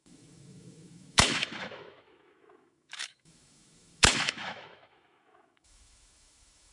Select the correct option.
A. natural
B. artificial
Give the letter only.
B